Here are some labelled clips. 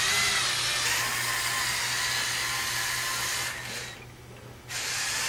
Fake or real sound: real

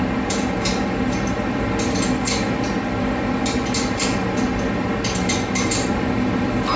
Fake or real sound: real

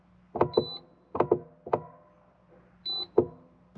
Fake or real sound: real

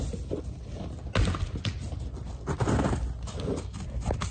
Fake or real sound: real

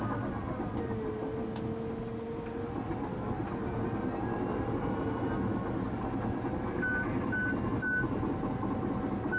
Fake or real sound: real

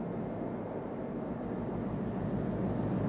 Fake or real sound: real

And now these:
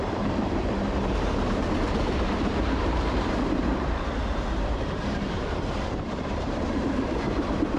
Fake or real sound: fake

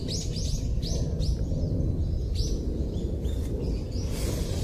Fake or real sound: real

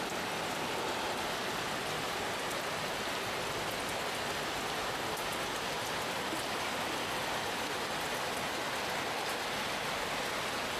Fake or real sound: real